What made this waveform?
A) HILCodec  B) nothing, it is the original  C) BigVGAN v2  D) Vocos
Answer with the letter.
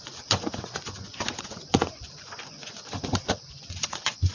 D